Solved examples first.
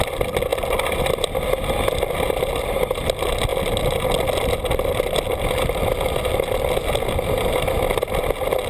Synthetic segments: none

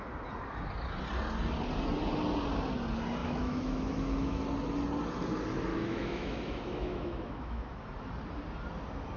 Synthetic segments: 3.2-4.4 (autoencoder, DAC-VAE); 5.7-7.8

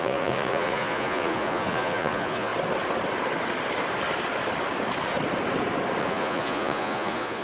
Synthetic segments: 0.0-2.5 (vocoder, Vocos); 6.0-7.4

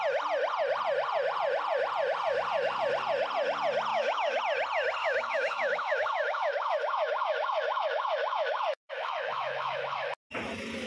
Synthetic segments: 3.9-4.4 (autoencoder, DAC-VAE); 5.0-10.1

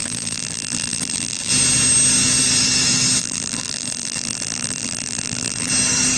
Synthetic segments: 0.0-1.5 (vocoder, BigVGAN v2); 3.2-5.7